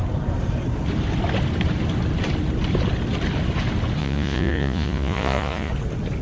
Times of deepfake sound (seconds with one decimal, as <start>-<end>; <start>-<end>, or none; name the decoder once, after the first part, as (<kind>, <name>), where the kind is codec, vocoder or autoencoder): 4.0-5.7 (vocoder, Vocos)